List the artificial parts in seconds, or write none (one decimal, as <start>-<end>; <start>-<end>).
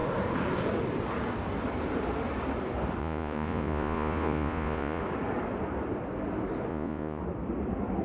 3.0-5.0; 6.7-7.2